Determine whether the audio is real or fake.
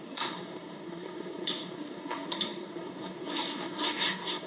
fake